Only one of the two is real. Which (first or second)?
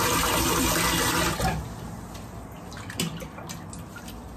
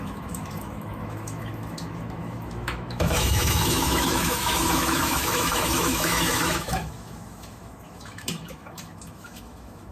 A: first